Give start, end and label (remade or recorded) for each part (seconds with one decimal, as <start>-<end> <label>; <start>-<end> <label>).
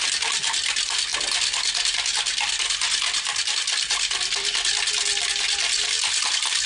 0.0-6.7 recorded